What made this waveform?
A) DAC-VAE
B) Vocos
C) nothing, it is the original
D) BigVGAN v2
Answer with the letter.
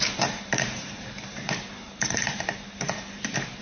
D